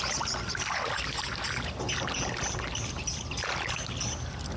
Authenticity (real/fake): real